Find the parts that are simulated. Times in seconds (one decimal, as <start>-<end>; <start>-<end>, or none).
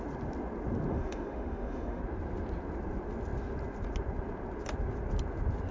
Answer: 0.9-2.0